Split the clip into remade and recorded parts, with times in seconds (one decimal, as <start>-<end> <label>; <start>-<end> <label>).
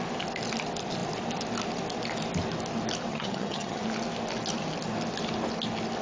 0.0-3.1 recorded; 3.1-3.8 remade; 3.8-6.0 recorded